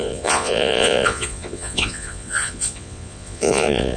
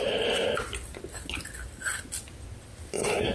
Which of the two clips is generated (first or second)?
first